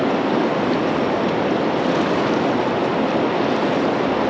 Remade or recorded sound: recorded